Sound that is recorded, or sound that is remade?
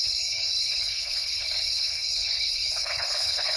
remade